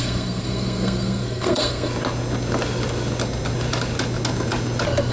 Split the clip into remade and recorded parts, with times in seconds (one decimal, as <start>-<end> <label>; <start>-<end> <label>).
0.0-1.9 remade; 1.9-5.1 recorded